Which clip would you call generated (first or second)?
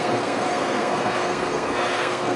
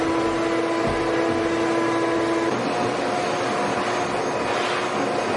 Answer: first